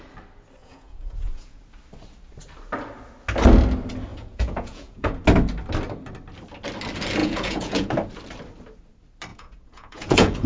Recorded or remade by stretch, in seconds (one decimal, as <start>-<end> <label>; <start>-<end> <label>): 0.0-0.6 recorded; 0.6-1.6 remade; 1.6-4.1 recorded; 4.1-5.2 remade; 5.2-7.2 recorded; 7.2-7.9 remade; 7.9-9.3 recorded; 9.3-10.5 remade